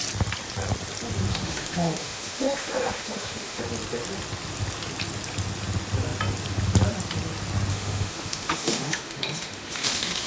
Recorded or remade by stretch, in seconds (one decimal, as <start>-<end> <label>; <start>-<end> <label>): 0.0-1.3 recorded; 1.3-3.6 remade; 3.6-7.7 recorded; 7.7-10.3 remade